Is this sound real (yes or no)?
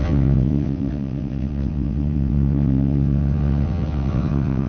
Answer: no